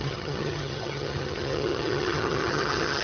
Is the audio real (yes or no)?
no